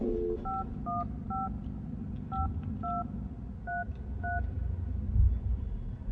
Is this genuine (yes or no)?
yes